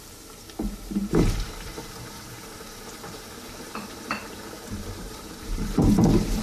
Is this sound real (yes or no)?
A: no